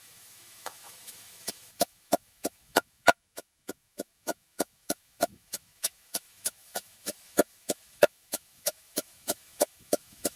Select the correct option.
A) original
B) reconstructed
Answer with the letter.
B